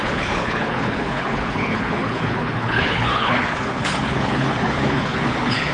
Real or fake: fake